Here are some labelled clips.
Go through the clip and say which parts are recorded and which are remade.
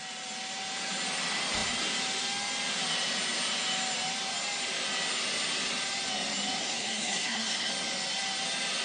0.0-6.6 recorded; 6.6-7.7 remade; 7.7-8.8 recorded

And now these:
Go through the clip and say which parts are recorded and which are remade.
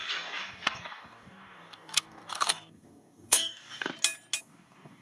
0.0-3.9 remade; 3.9-4.4 recorded; 4.4-5.0 remade